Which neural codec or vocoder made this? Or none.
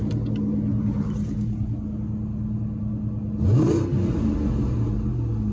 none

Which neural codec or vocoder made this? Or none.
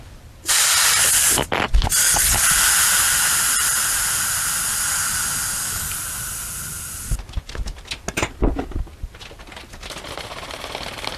none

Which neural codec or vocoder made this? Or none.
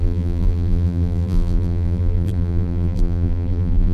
vocoder, BigVGAN v2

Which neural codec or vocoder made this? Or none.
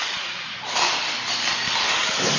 none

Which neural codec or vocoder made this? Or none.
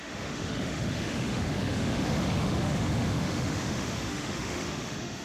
autoencoder, DAC-VAE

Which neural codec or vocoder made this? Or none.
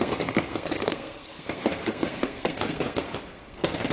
codec, SNAC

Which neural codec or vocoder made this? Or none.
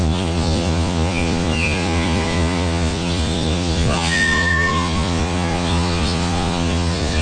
vocoder, Vocos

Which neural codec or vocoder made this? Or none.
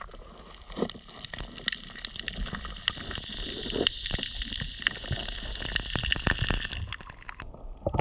none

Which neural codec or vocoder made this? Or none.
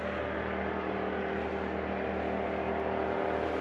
none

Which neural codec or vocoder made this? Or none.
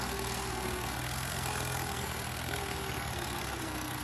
codec, SNAC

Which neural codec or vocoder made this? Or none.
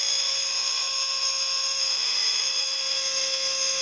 autoencoder, DAC-VAE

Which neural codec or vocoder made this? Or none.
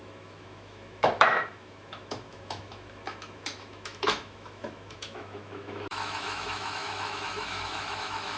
autoencoder, DAC-VAE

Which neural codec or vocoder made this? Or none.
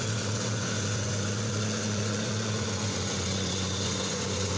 vocoder, Vocos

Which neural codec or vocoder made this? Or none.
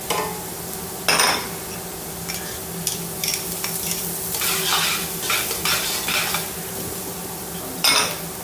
none